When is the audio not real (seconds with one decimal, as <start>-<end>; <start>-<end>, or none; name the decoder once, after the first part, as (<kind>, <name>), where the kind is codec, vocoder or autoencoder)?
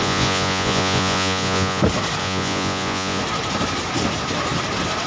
0.0-1.8 (vocoder, Vocos); 2.2-3.2